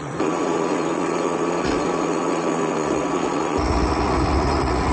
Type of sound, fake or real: fake